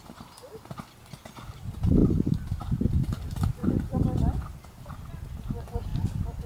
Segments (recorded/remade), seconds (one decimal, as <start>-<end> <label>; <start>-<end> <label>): 0.0-2.0 recorded; 2.0-2.9 remade; 2.9-3.6 recorded; 3.6-5.1 remade; 5.1-6.5 recorded